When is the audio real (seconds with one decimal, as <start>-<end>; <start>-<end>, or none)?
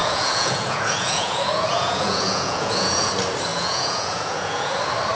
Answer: 3.1-3.5; 4.8-5.2